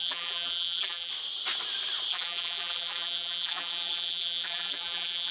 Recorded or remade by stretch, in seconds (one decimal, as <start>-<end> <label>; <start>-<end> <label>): 0.0-1.1 remade; 1.1-2.1 recorded; 2.1-5.3 remade